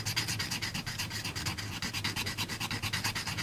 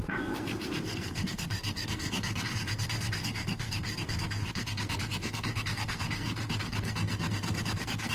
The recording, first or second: first